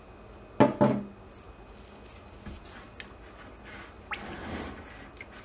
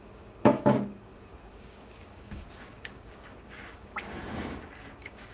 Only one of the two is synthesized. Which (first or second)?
second